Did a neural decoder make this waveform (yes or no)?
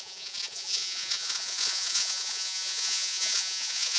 yes